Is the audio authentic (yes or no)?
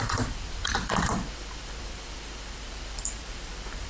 no